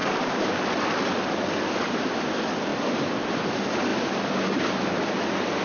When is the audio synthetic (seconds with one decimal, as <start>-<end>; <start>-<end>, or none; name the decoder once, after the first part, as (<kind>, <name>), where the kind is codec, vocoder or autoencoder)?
0.0-0.5 (vocoder, BigVGAN v2); 2.7-3.4